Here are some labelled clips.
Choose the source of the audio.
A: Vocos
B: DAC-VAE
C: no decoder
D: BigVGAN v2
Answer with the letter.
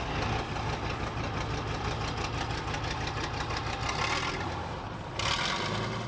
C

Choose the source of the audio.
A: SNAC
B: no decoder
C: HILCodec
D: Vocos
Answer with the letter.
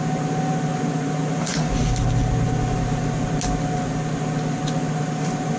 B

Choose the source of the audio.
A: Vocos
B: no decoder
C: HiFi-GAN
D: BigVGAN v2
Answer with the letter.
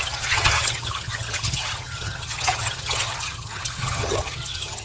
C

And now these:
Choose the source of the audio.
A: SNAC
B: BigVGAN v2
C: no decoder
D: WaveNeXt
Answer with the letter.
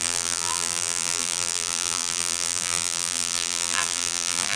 B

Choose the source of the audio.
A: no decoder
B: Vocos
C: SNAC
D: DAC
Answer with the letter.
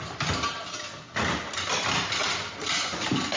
A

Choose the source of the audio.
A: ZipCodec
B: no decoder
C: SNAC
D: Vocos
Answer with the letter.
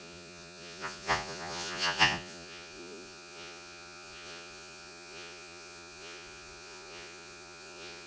D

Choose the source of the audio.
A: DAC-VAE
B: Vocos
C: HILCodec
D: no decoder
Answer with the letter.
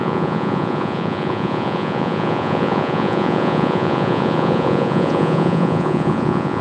B